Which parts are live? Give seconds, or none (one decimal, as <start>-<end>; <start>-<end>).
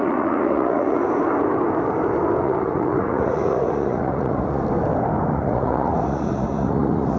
1.0-2.4; 4.6-5.3